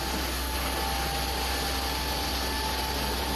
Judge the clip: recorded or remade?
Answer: recorded